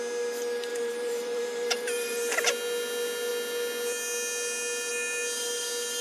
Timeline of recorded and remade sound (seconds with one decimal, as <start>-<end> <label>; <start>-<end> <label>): 0.0-0.7 recorded; 0.7-2.5 remade; 2.5-6.0 recorded